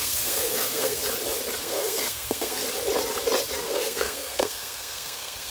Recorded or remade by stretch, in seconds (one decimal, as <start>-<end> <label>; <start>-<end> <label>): 0.0-1.0 remade; 1.0-1.6 recorded; 1.6-2.6 remade; 2.6-3.6 recorded; 3.6-5.5 remade